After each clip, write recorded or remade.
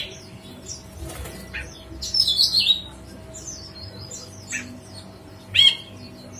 recorded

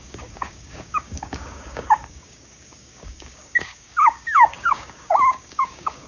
remade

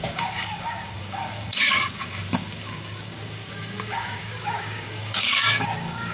remade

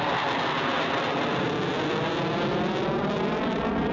recorded